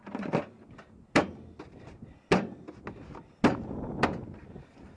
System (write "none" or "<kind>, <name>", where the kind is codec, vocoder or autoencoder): none